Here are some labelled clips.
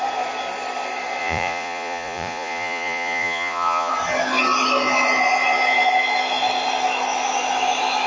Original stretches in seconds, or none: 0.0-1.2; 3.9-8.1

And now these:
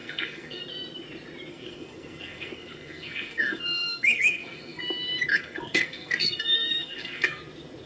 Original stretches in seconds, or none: 0.6-1.5; 4.8-5.3; 7.4-7.9

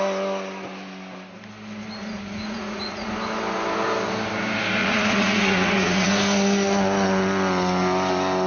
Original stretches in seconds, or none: 0.0-2.0; 3.1-4.8; 6.1-8.5

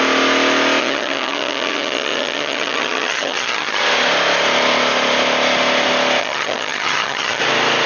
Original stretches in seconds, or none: 0.0-0.8; 3.8-6.2; 7.4-7.9